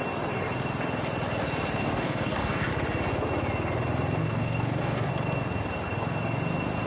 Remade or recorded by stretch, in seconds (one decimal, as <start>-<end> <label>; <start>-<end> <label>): 0.0-1.8 recorded; 1.8-2.7 remade; 2.7-4.2 recorded; 4.2-5.1 remade; 5.1-6.9 recorded